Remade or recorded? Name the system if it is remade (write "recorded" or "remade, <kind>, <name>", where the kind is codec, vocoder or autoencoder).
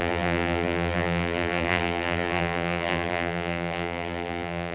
remade, vocoder, BigVGAN v2